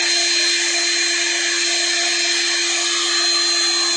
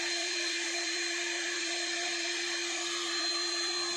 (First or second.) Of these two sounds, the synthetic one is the second